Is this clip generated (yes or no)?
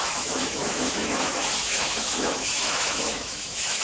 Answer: yes